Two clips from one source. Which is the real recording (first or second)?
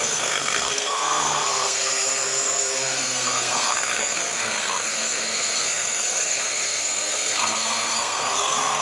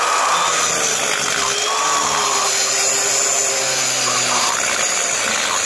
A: second